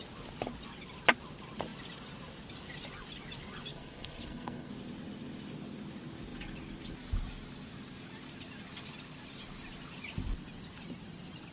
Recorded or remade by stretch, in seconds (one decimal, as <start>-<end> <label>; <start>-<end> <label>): 0.0-3.7 recorded; 3.7-4.7 remade; 4.7-11.5 recorded